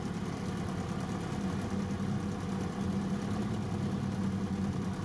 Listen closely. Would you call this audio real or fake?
real